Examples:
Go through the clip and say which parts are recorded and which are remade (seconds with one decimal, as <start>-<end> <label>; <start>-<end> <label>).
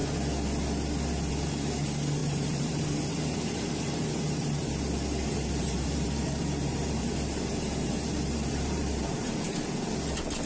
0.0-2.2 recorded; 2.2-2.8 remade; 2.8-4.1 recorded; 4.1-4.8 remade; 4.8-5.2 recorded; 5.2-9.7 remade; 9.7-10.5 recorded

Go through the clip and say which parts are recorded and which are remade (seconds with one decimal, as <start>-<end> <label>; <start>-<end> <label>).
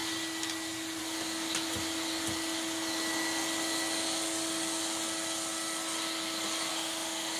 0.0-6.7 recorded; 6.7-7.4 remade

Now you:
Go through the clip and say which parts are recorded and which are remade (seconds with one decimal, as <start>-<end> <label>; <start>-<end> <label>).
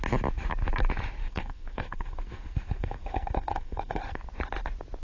0.0-1.2 recorded; 1.2-4.2 remade; 4.2-5.0 recorded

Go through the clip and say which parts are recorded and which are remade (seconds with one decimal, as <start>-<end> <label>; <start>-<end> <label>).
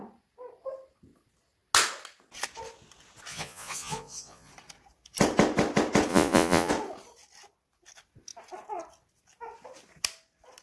0.0-3.3 recorded; 3.3-4.5 remade; 4.5-6.1 recorded; 6.1-6.7 remade; 6.7-10.6 recorded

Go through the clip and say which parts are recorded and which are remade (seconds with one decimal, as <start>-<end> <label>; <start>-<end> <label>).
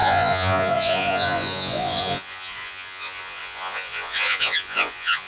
0.0-5.3 remade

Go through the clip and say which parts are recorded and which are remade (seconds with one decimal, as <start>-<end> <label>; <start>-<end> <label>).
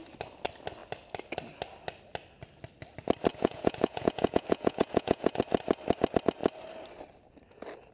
0.0-3.3 recorded; 3.3-5.4 remade; 5.4-7.9 recorded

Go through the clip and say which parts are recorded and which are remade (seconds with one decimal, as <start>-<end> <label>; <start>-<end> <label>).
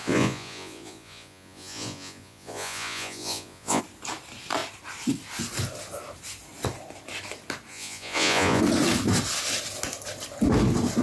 0.0-3.8 remade; 3.8-7.7 recorded; 7.7-8.6 remade; 8.6-11.0 recorded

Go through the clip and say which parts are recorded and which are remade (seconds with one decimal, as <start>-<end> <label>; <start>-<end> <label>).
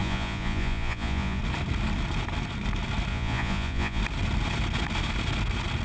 0.0-1.4 remade; 1.4-3.1 recorded; 3.1-4.0 remade; 4.0-5.8 recorded